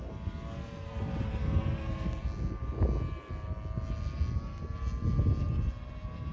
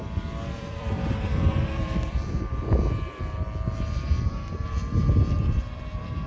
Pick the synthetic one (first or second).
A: second